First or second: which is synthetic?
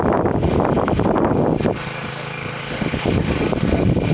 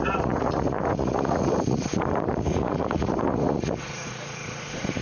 second